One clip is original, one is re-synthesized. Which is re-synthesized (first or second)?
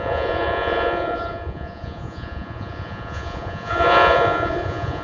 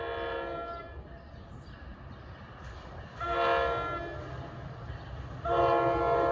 first